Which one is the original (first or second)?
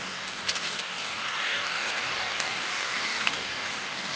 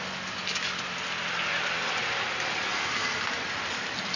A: second